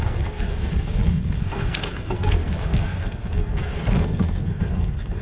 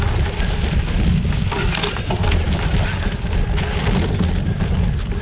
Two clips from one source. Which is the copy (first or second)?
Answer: first